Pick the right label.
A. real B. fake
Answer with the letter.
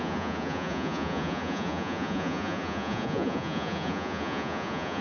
B